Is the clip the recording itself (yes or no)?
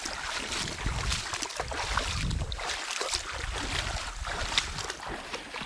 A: yes